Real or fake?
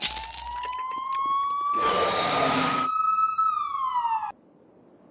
real